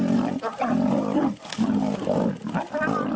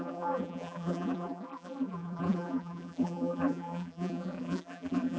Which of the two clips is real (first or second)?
first